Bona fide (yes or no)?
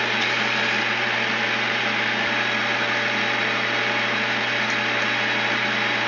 yes